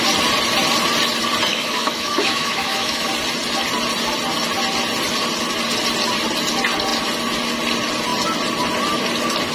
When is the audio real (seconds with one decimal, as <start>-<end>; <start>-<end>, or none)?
0.0-1.5; 3.1-9.5